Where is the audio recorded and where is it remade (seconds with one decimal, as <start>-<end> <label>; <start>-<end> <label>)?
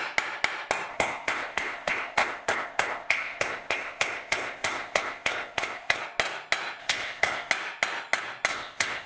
0.0-0.9 recorded; 0.9-6.0 remade; 6.0-6.8 recorded; 6.8-7.5 remade; 7.5-8.5 recorded; 8.5-9.1 remade